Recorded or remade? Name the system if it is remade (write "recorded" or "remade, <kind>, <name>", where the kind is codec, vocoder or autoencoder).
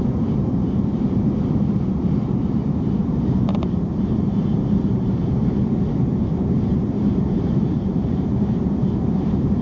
remade, vocoder, BigVGAN v2